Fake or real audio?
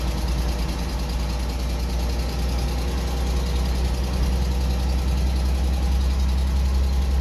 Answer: real